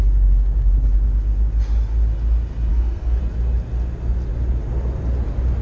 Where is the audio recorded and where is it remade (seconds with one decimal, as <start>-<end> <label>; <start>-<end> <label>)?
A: 0.0-2.7 recorded; 2.7-3.2 remade; 3.2-5.6 recorded